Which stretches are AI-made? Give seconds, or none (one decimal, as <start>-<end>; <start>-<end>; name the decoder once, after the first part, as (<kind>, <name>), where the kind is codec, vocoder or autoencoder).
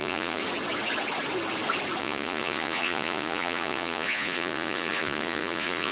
0.0-0.4 (vocoder, Vocos); 2.0-5.9